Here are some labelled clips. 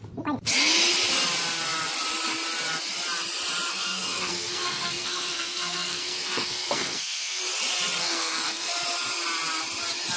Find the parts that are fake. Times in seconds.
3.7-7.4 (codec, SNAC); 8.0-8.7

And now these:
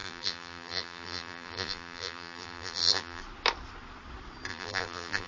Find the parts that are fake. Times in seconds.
0.0-3.2 (vocoder, BigVGAN v2); 4.5-5.3

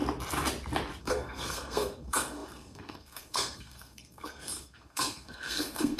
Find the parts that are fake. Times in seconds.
1.0-6.0 (codec, SNAC)